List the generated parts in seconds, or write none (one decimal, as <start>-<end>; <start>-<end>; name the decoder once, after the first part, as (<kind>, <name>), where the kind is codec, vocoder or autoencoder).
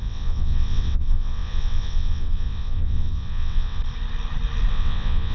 0.0-3.8 (vocoder, WaveNeXt); 4.7-5.3